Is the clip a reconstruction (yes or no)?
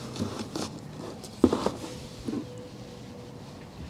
no